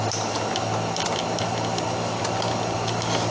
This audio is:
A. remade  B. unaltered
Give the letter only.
B